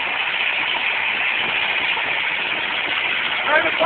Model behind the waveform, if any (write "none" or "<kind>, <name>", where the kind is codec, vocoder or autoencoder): none